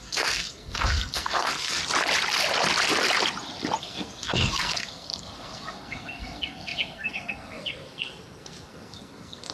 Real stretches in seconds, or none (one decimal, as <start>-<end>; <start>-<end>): 1.8-3.8